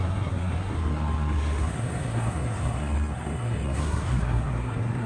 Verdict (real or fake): fake